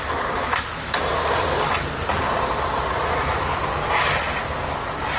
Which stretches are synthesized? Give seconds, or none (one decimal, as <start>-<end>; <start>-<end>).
none